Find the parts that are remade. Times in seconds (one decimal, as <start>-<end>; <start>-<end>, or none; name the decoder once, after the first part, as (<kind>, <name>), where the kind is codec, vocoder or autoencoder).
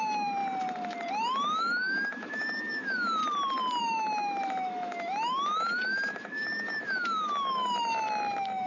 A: 0.0-0.4 (autoencoder, DAC-VAE); 1.1-3.2; 3.8-8.7